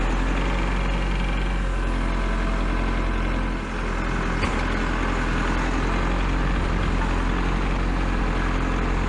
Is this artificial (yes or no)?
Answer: no